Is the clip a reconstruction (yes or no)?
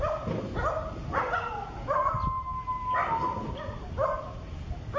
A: no